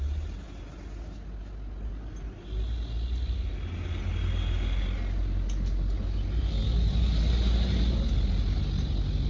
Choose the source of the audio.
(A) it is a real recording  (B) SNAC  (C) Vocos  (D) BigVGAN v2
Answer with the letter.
A